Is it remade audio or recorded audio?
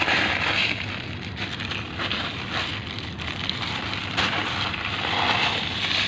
recorded